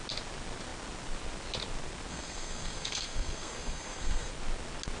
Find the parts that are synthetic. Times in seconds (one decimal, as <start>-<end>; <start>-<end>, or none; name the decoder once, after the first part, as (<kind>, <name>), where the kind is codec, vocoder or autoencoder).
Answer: 2.1-4.3 (codec, SNAC)